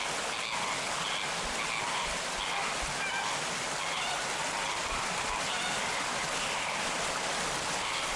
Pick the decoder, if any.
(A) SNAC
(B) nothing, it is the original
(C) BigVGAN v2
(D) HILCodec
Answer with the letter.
B